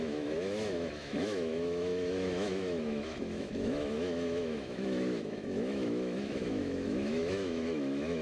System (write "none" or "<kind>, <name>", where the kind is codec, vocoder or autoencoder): autoencoder, DAC-VAE